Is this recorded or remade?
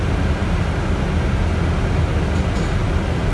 recorded